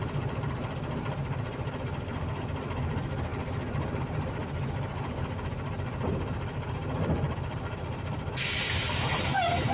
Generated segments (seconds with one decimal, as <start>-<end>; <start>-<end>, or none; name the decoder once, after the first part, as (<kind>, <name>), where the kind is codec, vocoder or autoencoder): none